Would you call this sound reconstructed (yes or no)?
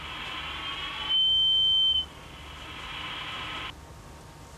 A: no